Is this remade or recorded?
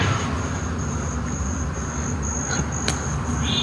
recorded